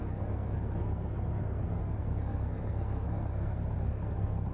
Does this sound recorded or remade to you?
remade